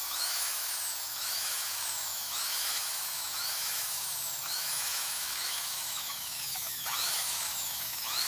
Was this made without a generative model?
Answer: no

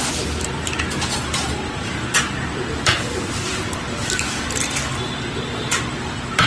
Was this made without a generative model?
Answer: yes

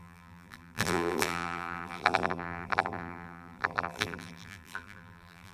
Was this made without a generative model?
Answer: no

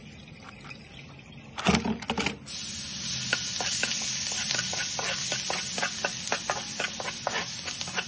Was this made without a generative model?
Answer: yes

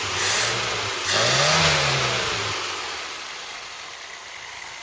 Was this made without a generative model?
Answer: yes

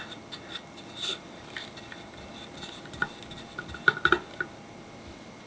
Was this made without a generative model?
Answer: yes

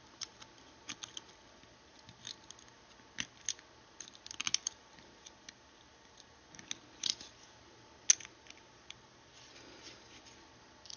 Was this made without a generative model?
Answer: yes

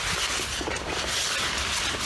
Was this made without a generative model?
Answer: yes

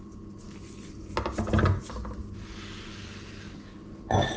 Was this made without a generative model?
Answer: yes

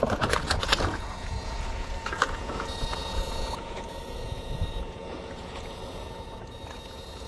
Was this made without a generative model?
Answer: no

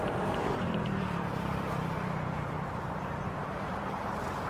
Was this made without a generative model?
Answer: no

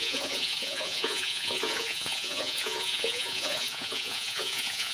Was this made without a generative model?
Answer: no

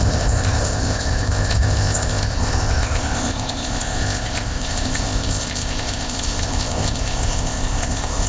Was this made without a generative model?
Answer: no